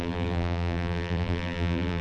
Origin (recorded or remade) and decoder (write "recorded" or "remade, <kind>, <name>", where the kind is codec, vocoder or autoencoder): remade, vocoder, BigVGAN v2